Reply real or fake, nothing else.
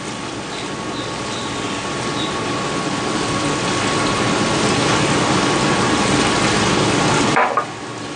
real